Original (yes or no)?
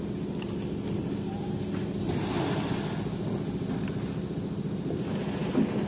yes